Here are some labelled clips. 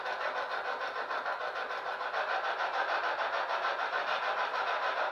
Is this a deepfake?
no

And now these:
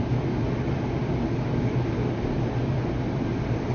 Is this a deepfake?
no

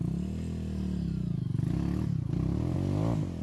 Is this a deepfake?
no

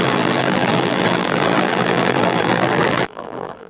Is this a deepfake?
yes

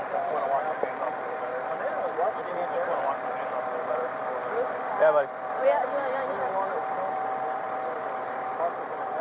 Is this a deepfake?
yes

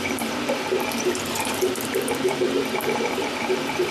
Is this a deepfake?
yes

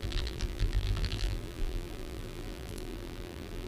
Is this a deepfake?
yes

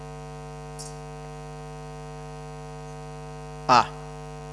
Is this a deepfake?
no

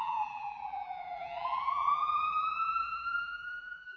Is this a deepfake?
yes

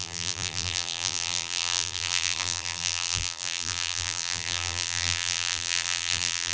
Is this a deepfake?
yes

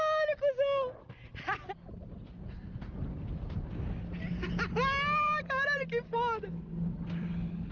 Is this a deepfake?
no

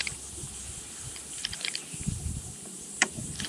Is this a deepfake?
yes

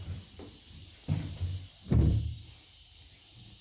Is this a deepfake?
yes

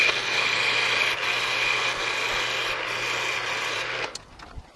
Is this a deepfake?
no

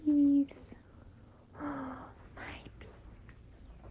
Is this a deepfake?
no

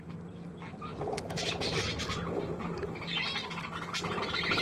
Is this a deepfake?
no